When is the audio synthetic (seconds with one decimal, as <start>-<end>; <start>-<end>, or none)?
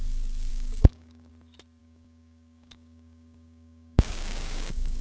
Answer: 0.5-1.3; 1.8-5.0